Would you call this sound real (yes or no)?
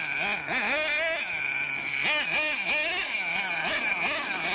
yes